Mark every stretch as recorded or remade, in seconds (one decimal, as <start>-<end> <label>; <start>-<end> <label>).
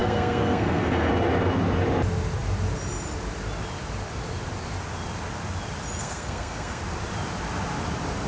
0.0-1.1 remade; 1.1-6.0 recorded; 6.0-6.8 remade; 6.8-8.3 recorded